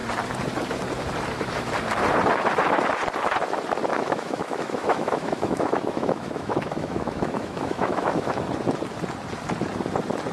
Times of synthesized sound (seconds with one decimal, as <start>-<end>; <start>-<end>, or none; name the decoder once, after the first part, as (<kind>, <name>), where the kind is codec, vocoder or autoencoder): 3.9-8.4 (autoencoder, DAC-VAE)